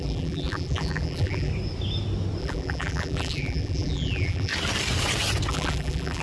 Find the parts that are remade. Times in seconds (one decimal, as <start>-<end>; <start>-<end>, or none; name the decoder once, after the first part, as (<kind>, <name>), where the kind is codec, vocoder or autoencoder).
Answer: 0.0-1.5 (vocoder, BigVGAN v2); 2.4-4.5; 5.5-6.2